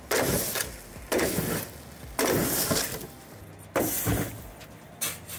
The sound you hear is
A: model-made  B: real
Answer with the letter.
B